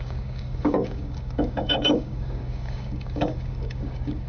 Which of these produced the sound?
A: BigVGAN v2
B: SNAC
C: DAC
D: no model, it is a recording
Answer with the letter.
C